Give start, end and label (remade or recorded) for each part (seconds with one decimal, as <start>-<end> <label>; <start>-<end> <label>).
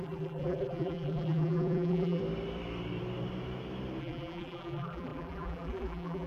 0.0-2.2 remade; 2.2-4.0 recorded; 4.0-6.3 remade